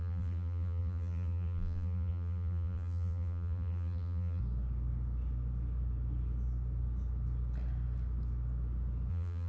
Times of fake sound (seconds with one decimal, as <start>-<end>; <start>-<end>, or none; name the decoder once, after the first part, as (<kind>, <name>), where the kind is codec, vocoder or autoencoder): 0.0-4.4 (vocoder, BigVGAN v2); 9.1-9.5